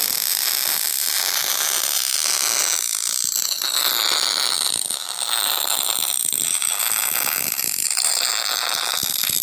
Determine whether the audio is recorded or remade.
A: recorded